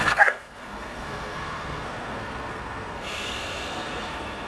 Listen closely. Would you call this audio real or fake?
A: fake